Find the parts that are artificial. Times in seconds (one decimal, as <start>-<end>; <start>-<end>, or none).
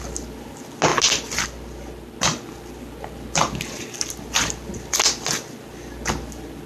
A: none